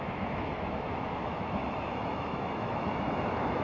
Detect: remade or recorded remade